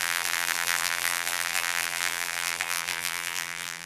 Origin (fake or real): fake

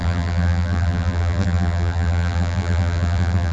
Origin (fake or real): fake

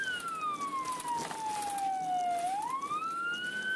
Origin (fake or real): real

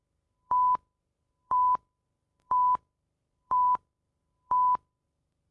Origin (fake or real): fake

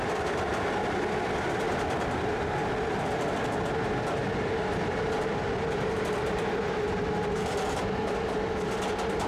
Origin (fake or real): fake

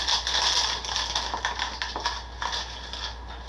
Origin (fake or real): real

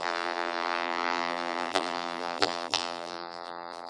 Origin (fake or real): fake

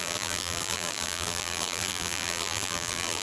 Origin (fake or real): fake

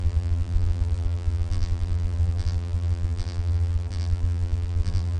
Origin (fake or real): fake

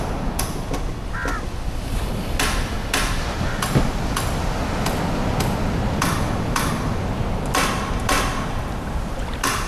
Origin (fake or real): real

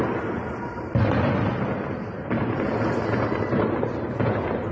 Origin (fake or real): real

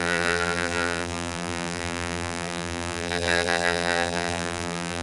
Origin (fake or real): fake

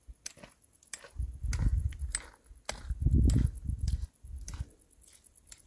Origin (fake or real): real